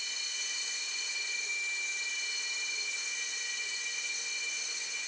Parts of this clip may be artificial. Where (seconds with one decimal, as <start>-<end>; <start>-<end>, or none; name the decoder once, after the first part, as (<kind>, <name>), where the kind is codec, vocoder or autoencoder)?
0.0-1.5 (vocoder, Vocos); 2.7-5.1